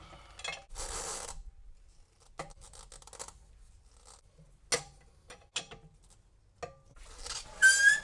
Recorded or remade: recorded